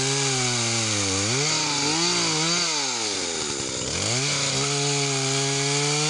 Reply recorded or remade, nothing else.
recorded